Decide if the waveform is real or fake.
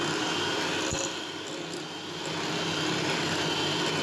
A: real